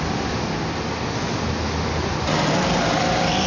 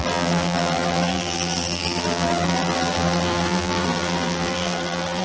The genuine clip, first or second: first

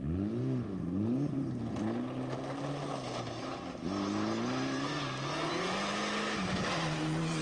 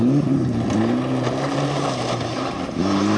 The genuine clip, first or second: first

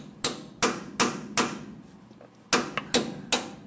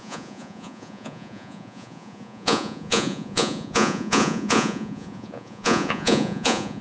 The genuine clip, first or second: first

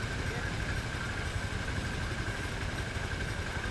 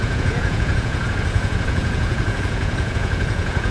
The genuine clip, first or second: first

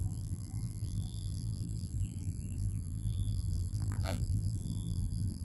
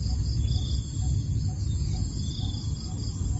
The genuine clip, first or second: second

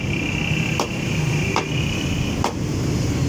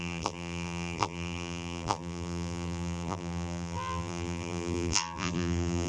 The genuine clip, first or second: first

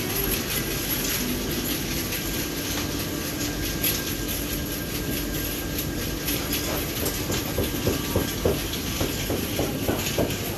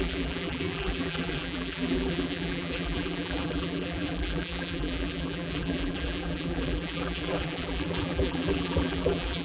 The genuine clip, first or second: first